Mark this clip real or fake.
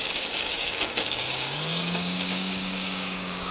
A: fake